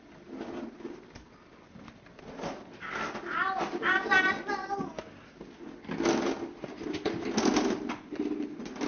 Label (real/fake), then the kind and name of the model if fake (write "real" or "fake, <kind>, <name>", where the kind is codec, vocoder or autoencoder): real